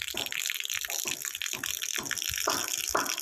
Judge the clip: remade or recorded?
recorded